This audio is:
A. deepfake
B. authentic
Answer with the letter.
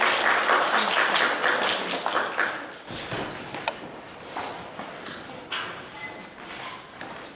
B